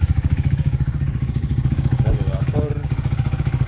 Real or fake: fake